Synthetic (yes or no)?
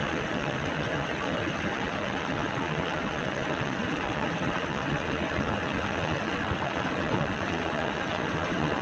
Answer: yes